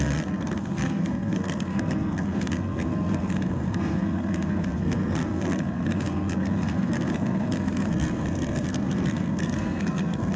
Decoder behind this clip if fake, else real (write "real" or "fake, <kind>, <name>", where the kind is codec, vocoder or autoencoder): fake, codec, SNAC